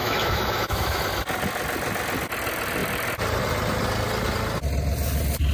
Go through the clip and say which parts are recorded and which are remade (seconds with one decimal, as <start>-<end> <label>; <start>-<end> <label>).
0.0-1.0 remade; 1.0-5.5 recorded